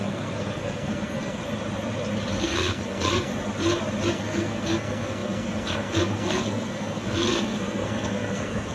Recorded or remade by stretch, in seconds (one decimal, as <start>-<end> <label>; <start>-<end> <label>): 0.0-1.4 remade; 1.4-2.4 recorded; 2.4-3.3 remade; 3.3-4.1 recorded; 4.1-8.7 remade